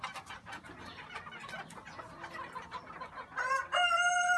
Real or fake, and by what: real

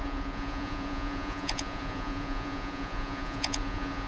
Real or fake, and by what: fake, vocoder, Vocos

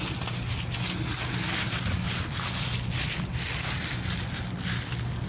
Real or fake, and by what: real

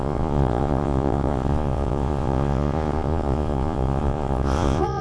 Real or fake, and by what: fake, vocoder, Vocos